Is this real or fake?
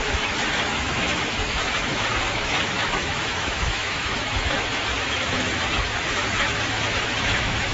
fake